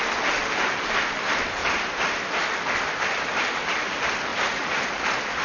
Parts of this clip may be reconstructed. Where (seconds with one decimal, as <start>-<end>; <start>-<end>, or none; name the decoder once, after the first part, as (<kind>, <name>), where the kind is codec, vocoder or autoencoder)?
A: 4.3-4.9 (vocoder, Vocos)